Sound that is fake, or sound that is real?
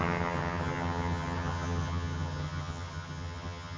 fake